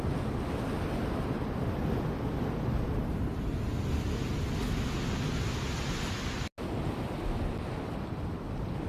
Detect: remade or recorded recorded